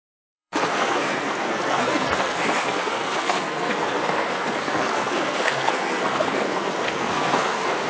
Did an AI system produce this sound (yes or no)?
yes